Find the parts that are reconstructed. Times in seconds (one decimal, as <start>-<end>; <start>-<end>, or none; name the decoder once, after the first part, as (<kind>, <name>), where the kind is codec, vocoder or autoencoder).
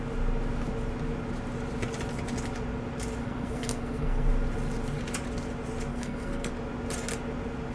3.2-4.3 (codec, SNAC); 5.9-6.5